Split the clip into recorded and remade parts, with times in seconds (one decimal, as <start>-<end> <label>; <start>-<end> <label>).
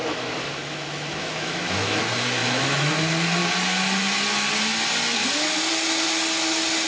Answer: 0.0-2.0 remade; 2.0-2.4 recorded; 2.4-2.9 remade; 2.9-6.9 recorded